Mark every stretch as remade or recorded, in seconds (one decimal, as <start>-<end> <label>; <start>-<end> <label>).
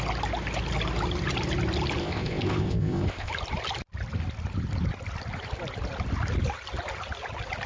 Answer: 0.0-2.0 recorded; 2.0-3.3 remade; 3.3-7.7 recorded